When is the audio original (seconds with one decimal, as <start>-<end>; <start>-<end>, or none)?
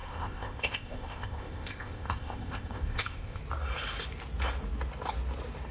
3.4-5.7